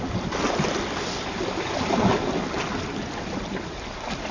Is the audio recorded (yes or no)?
no